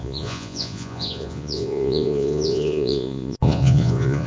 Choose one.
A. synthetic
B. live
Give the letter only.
A